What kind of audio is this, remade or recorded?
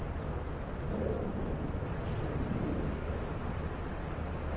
recorded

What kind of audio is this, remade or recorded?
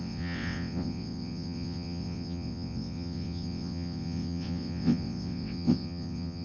remade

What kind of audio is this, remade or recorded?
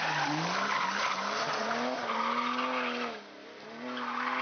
recorded